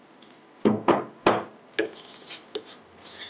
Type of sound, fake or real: real